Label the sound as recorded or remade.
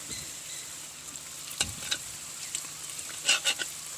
recorded